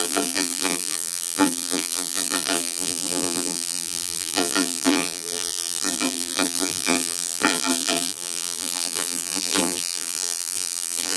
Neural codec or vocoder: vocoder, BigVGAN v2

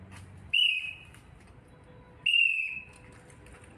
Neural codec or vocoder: none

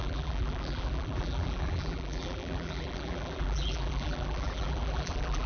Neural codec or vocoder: vocoder, BigVGAN v2